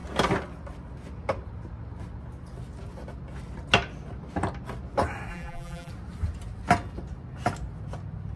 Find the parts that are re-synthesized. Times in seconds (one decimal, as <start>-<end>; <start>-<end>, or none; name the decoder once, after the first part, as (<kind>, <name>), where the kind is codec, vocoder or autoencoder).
5.3-5.9 (vocoder, BigVGAN v2)